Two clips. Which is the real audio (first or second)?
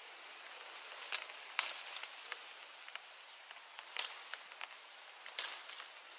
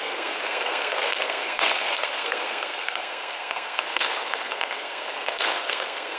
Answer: first